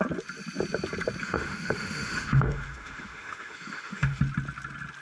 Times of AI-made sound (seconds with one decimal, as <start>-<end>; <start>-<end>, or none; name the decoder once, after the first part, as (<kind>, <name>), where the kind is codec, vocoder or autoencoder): 1.2-4.2 (autoencoder, DAC-VAE)